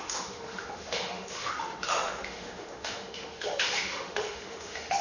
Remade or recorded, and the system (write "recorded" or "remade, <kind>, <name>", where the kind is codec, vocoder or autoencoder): remade, autoencoder, DAC-VAE